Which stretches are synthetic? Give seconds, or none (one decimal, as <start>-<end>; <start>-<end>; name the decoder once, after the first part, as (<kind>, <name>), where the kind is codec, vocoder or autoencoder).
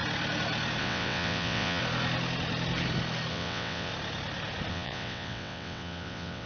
0.8-1.8 (vocoder, WaveNeXt); 3.3-3.9; 4.7-6.5